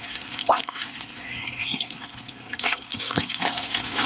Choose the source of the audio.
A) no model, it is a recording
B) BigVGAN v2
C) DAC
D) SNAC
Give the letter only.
D